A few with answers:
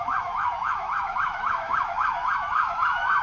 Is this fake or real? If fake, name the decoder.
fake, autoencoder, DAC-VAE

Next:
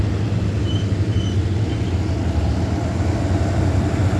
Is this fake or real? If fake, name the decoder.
real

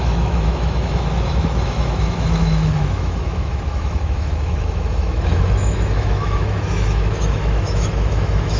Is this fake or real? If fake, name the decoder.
fake, autoencoder, DAC-VAE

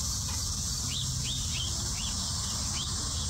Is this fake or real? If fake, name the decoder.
real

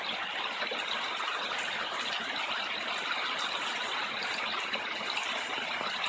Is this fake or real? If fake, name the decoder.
real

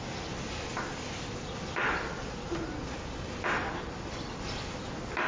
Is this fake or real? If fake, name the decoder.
real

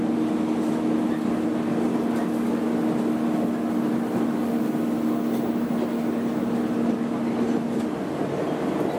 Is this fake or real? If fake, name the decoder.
real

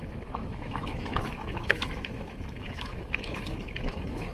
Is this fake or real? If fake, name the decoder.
fake, autoencoder, DAC-VAE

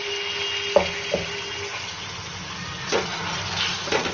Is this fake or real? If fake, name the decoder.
real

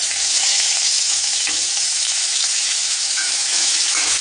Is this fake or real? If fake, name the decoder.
fake, autoencoder, DAC-VAE